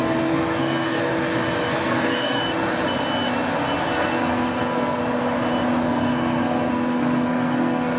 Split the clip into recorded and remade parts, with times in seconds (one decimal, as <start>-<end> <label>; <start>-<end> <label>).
0.0-1.1 remade; 1.1-1.7 recorded; 1.7-2.4 remade; 2.4-3.9 recorded; 3.9-5.0 remade; 5.0-5.8 recorded; 5.8-8.0 remade